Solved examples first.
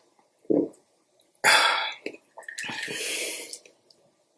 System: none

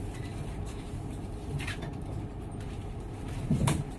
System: vocoder, BigVGAN v2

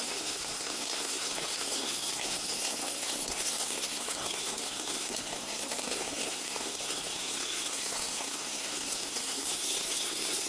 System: codec, SNAC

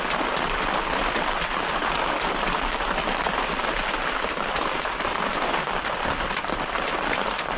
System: none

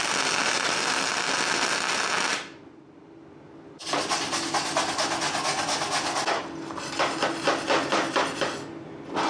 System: none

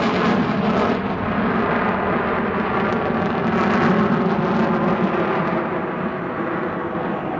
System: none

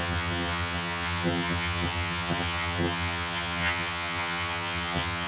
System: vocoder, HiFi-GAN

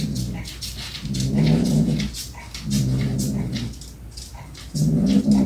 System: none